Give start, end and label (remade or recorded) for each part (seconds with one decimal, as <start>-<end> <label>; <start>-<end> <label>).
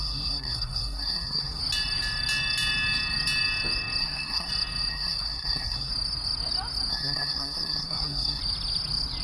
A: 0.0-1.6 remade; 1.6-4.0 recorded; 4.0-4.5 remade; 4.5-4.9 recorded; 4.9-5.9 remade; 5.9-6.9 recorded; 6.9-8.4 remade; 8.4-9.2 recorded